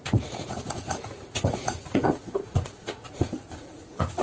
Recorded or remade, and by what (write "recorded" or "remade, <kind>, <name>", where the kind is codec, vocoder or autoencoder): remade, vocoder, Vocos